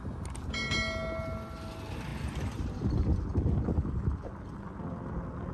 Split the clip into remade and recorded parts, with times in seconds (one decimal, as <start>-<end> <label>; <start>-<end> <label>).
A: 0.0-5.5 recorded